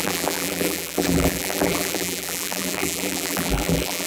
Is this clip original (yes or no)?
no